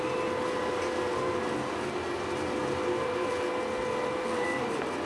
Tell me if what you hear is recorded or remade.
recorded